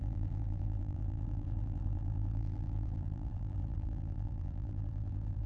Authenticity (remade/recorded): remade